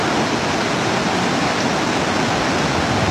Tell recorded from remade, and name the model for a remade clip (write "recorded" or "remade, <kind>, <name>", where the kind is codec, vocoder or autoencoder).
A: recorded